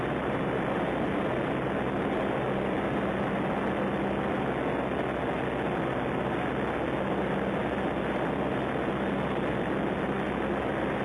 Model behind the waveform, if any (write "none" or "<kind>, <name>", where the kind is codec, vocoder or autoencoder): none